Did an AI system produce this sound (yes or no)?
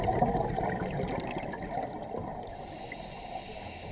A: no